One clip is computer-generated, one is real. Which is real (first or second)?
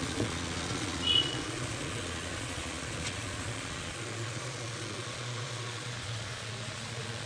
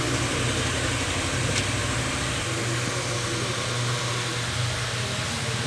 second